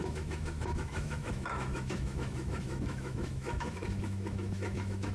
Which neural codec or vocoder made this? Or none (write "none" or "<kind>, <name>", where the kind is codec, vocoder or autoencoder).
autoencoder, DAC-VAE